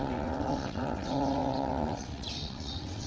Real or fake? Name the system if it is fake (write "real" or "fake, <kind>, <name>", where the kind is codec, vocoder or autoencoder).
fake, vocoder, WaveNeXt